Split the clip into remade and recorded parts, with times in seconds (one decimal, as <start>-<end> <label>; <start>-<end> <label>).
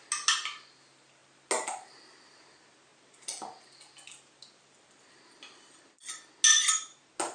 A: 0.0-7.3 recorded